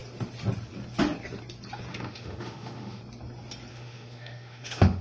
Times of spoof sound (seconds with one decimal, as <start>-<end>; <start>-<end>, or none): 1.9-3.0; 3.7-5.0